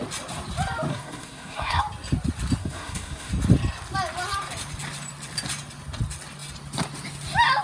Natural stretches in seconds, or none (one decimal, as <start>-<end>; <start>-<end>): 0.0-0.9; 1.8-2.6; 3.3-7.6